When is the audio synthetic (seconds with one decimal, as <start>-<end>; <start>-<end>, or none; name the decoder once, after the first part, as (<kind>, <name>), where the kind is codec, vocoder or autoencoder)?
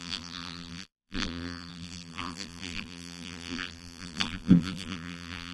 0.0-5.5 (vocoder, BigVGAN v2)